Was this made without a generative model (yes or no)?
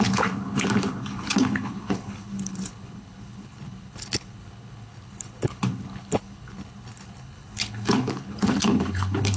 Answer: no